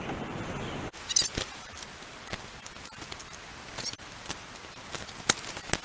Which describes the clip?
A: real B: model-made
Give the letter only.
A